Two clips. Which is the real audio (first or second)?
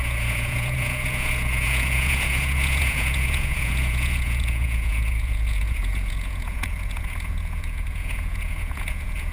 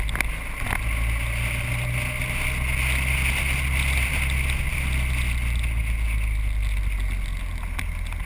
second